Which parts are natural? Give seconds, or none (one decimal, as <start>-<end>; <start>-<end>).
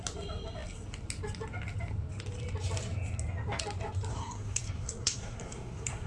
0.0-4.1